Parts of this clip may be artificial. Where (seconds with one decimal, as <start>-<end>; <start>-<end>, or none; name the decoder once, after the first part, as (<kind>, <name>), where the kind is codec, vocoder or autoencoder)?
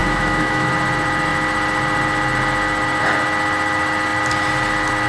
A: 0.0-0.7 (autoencoder, DAC-VAE)